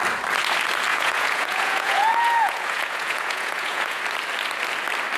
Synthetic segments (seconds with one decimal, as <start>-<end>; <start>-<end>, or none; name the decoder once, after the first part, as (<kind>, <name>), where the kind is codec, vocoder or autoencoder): 0.9-4.0 (vocoder, Vocos)